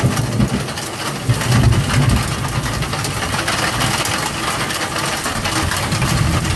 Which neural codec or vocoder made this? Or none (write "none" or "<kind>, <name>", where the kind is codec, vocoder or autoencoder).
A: none